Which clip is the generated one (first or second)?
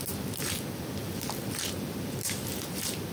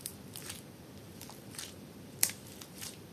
second